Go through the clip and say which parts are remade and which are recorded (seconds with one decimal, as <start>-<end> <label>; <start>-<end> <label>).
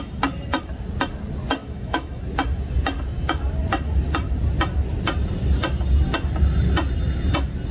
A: 0.0-1.6 recorded; 1.6-2.2 remade; 2.2-7.7 recorded